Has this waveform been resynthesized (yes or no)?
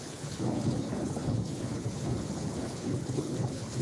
yes